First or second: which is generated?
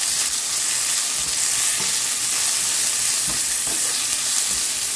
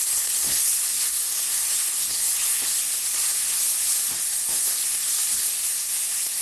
second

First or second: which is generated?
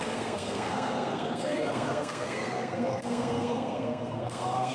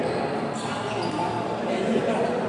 first